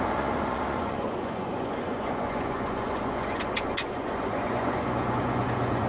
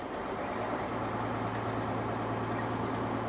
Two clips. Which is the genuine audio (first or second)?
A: second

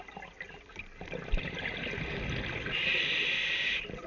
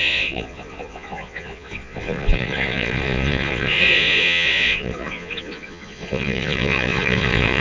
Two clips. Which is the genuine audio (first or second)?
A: first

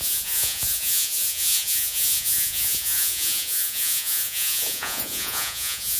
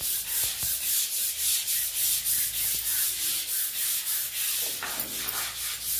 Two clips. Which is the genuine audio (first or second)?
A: second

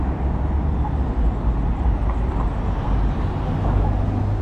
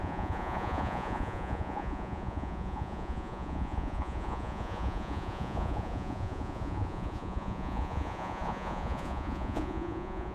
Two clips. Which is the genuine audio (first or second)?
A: first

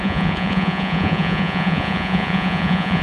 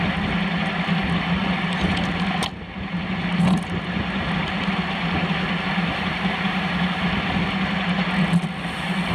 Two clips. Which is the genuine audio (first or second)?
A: second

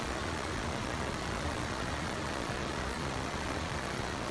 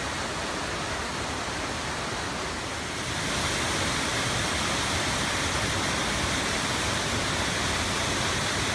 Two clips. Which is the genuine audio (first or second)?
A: second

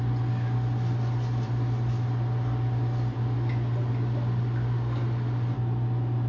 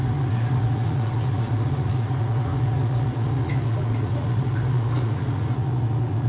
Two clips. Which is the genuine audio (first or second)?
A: first